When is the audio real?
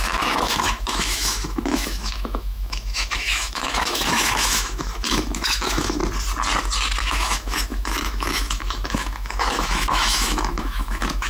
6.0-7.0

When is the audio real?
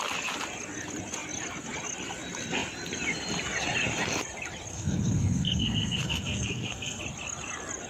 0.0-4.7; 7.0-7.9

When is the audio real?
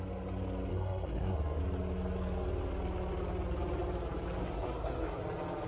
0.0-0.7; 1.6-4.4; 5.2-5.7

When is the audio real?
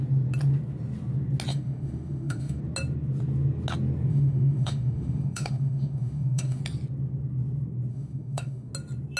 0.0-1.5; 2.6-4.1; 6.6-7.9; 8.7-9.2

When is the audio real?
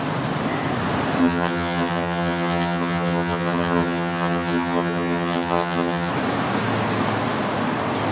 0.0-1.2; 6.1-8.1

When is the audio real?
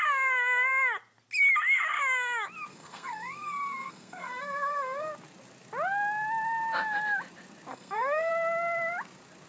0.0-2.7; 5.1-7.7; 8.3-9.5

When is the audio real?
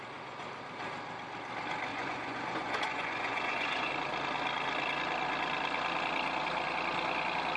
0.0-1.9; 3.9-7.6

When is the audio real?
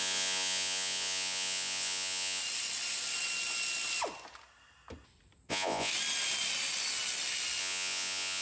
2.4-5.5; 5.9-7.6